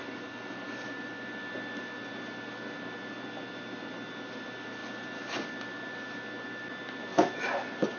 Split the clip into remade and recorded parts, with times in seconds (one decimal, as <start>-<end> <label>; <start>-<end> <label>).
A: 0.0-8.0 recorded